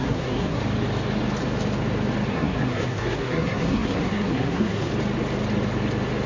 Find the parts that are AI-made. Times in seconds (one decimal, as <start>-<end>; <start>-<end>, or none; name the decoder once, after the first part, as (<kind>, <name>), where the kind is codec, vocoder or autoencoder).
0.0-0.6 (codec, SNAC); 2.3-4.9